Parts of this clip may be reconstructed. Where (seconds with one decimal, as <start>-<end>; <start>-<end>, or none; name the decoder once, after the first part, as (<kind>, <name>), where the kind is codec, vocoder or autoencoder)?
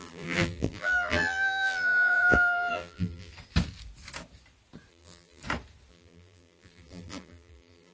0.0-3.3 (vocoder, BigVGAN v2); 4.9-5.4; 5.9-7.9